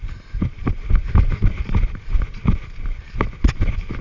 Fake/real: real